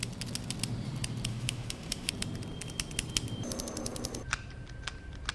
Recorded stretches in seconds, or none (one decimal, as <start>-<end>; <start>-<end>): 0.0-1.3; 2.1-5.3